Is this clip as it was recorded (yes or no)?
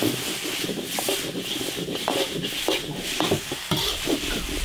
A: yes